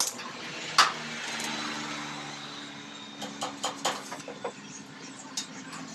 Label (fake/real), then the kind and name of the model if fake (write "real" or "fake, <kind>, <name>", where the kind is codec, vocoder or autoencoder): real